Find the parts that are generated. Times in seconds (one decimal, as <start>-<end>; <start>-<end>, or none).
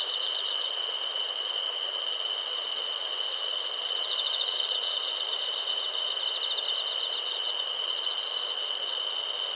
0.0-5.3; 7.2-9.5